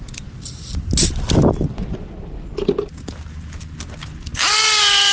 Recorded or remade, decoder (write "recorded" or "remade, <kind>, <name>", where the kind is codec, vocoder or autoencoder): recorded